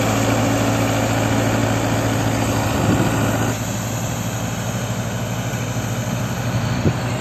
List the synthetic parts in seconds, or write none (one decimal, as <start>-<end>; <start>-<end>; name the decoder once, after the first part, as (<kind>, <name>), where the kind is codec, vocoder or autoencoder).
none

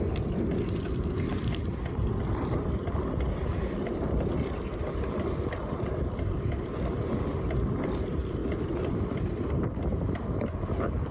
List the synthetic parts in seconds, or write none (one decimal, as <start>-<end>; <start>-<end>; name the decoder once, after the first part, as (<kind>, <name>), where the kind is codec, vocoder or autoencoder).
0.0-8.4 (vocoder, BigVGAN v2)

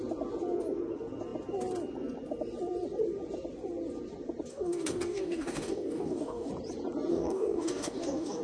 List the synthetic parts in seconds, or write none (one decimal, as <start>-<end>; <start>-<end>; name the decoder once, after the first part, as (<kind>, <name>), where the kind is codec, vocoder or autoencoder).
4.5-6.5 (codec, DAC); 7.1-8.4

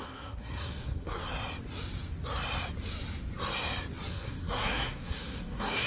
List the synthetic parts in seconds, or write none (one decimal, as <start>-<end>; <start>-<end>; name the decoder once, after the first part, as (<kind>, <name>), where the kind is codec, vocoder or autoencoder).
0.0-1.2 (codec, SNAC); 4.1-5.9

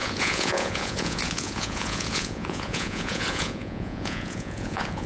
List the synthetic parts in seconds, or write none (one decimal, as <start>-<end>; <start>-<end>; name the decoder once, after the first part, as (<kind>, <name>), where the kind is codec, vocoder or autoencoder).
0.0-5.1 (vocoder, Vocos)